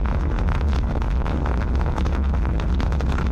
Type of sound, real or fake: fake